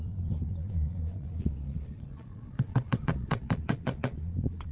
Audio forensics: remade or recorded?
remade